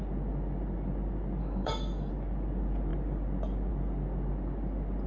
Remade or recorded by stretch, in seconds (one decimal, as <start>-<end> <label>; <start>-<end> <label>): 0.0-1.4 recorded; 1.4-2.1 remade; 2.1-5.1 recorded